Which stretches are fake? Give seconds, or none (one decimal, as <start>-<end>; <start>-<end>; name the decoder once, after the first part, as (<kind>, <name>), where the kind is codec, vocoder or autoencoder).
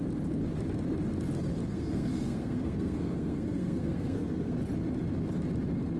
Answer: 1.7-4.6 (codec, SNAC)